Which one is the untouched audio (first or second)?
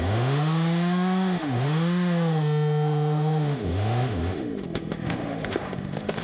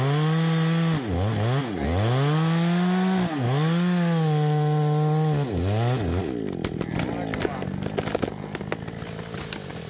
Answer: second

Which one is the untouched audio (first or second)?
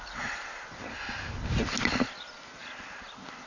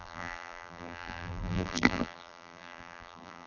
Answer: first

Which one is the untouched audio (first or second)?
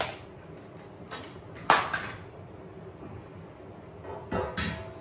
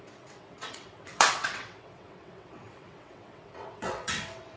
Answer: first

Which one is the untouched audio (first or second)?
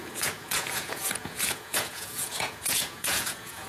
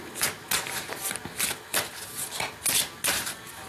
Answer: second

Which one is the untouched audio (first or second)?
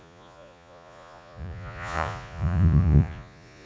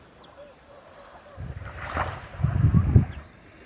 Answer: second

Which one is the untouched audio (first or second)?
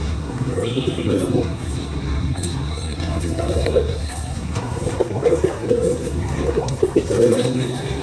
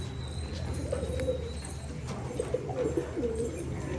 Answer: second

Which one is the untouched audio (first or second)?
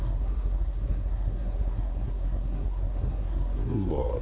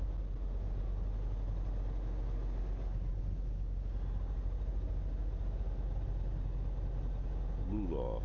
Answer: second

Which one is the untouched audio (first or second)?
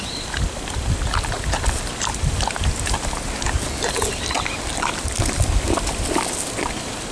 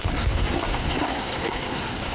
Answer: first